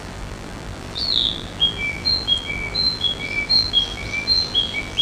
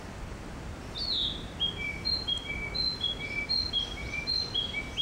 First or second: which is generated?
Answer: first